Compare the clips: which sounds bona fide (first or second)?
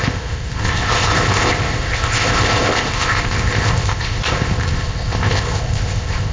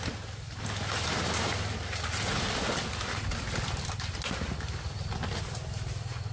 second